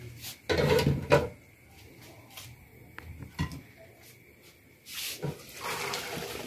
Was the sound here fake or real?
real